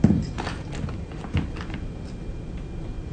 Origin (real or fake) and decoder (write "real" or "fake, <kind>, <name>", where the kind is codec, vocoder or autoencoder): fake, vocoder, BigVGAN v2